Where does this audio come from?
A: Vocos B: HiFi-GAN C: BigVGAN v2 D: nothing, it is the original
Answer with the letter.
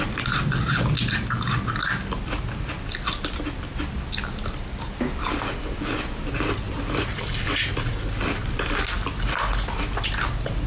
D